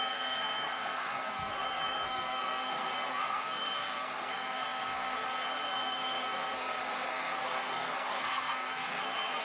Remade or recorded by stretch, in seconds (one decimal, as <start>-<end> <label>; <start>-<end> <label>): 0.0-9.4 remade